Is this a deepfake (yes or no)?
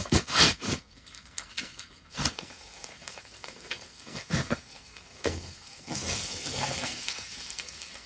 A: yes